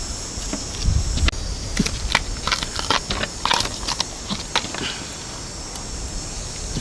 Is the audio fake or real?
real